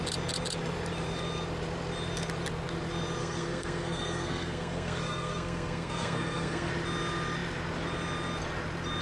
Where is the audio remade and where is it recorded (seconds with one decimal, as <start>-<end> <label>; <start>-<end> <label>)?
0.0-3.2 recorded; 3.2-6.7 remade; 6.7-9.0 recorded